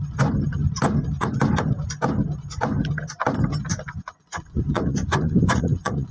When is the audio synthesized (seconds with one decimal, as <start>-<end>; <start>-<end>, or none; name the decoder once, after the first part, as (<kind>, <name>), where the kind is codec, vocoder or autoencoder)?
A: 3.7-6.1 (vocoder, Vocos)